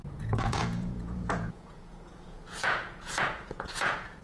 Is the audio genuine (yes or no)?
no